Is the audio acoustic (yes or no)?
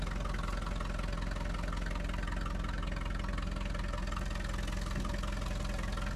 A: yes